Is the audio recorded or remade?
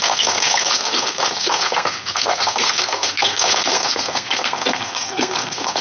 remade